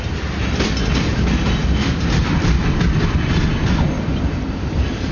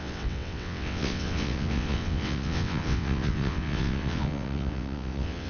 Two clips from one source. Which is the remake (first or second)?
second